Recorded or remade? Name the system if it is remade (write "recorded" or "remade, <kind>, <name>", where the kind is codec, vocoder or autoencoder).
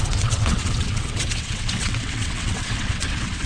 remade, vocoder, WaveNeXt